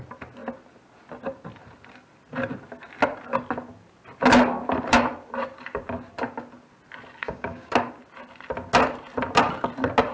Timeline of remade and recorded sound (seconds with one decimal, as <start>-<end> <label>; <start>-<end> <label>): 0.0-7.2 recorded; 7.2-7.7 remade; 7.7-10.1 recorded